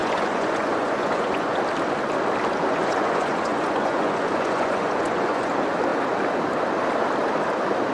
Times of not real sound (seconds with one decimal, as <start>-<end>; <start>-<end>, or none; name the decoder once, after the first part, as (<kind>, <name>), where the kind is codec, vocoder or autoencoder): 0.0-1.6 (vocoder, Vocos); 2.6-5.5